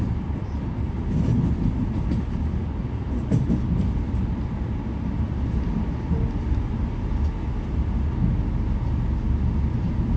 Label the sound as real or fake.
real